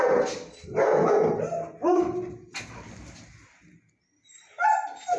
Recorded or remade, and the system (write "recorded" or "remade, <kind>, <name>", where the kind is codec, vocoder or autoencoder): recorded